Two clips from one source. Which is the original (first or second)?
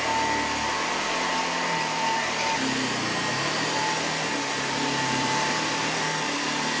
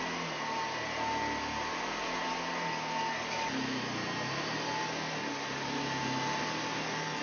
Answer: second